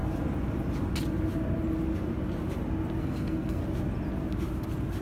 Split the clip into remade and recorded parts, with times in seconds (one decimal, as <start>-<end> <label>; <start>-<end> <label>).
0.0-3.0 recorded; 3.0-3.6 remade; 3.6-5.0 recorded